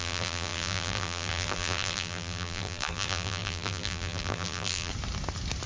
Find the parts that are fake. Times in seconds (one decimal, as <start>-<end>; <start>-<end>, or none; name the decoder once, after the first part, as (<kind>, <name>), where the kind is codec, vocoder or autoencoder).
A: 0.0-4.9 (vocoder, BigVGAN v2)